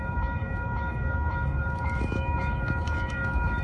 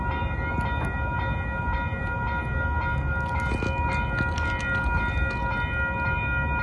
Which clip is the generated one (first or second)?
first